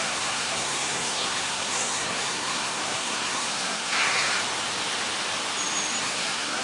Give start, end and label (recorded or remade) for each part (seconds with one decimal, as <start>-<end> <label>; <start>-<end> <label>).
0.0-4.3 remade; 4.3-6.0 recorded; 6.0-6.6 remade